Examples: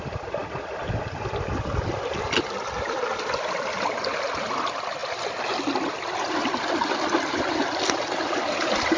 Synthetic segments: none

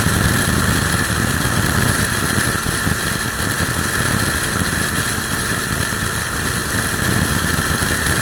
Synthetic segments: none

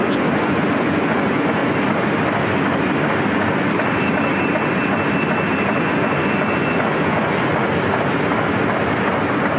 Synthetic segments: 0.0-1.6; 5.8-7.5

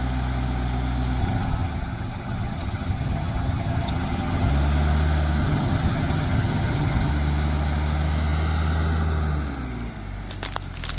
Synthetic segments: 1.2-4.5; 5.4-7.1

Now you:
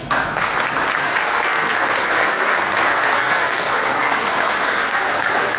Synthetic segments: 0.0-0.5; 1.0-5.6